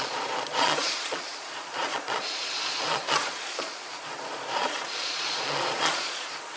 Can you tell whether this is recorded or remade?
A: remade